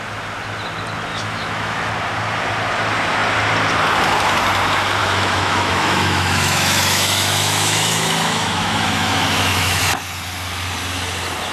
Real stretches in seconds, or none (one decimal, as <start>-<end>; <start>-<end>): 0.0-1.1; 1.9-5.0; 9.8-11.5